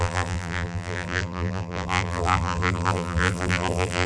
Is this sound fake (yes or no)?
yes